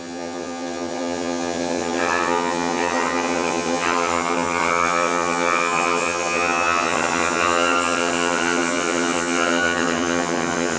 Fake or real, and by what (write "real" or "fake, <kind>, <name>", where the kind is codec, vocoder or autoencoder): fake, vocoder, HiFi-GAN